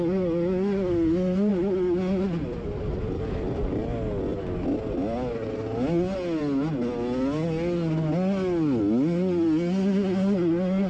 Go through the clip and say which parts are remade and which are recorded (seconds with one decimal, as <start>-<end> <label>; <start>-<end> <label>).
0.0-10.9 recorded